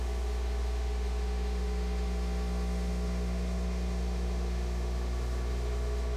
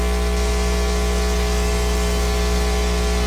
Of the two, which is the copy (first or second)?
first